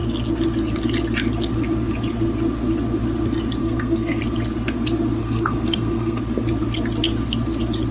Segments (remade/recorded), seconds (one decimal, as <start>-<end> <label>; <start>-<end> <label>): 0.0-3.6 recorded; 3.6-4.2 remade; 4.2-5.2 recorded; 5.2-6.2 remade; 6.2-7.9 recorded